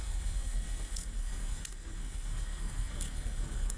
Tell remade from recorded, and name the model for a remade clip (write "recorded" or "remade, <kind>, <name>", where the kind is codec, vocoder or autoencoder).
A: remade, codec, SNAC